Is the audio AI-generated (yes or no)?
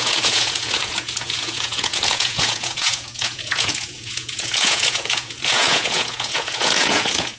yes